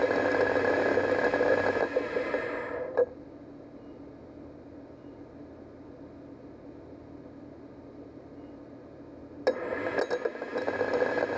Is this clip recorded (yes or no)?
yes